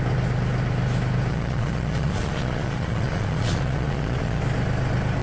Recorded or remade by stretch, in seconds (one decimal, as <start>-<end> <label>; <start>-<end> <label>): 0.0-1.3 recorded; 1.3-4.4 remade; 4.4-5.2 recorded